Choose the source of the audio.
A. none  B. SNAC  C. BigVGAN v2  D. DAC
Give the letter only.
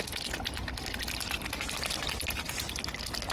A